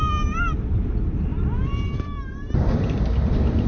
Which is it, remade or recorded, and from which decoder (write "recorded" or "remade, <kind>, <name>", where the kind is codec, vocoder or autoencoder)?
remade, vocoder, BigVGAN v2